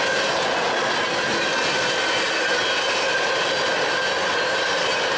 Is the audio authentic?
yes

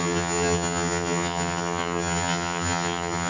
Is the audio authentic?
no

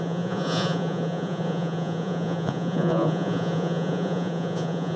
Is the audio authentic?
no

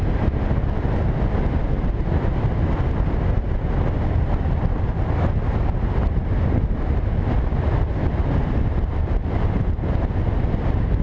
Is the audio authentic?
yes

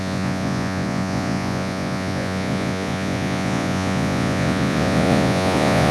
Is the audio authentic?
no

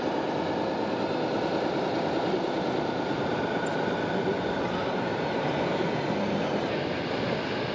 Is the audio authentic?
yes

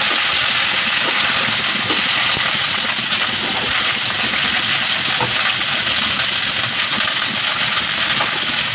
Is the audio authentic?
yes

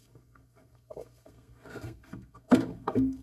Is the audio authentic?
no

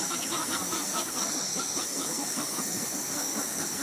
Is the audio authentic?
no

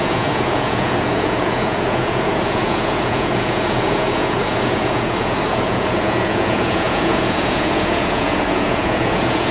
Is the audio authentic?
no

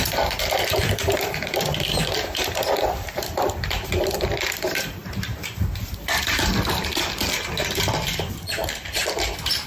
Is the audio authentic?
no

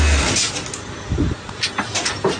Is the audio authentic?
yes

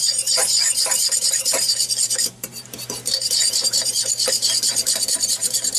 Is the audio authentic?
no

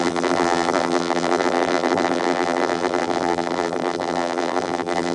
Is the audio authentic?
no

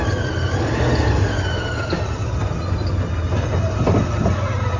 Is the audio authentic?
yes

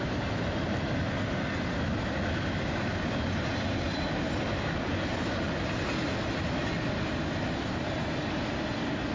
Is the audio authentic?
yes